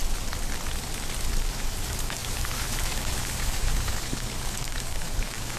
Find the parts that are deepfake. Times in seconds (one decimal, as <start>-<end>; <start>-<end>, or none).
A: 1.5-5.6